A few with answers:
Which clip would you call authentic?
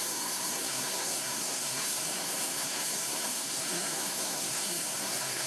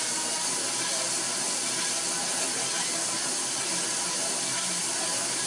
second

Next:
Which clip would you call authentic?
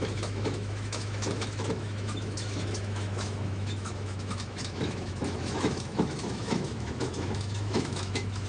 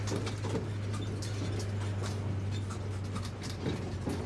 second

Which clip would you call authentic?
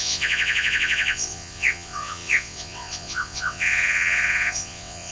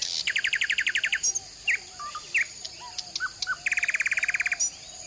second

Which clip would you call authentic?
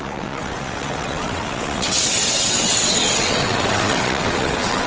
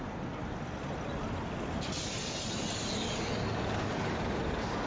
second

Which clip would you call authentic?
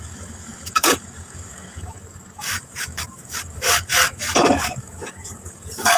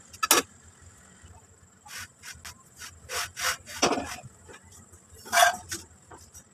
second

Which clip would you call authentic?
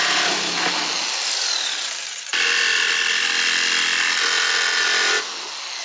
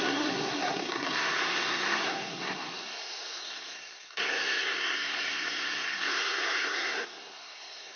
first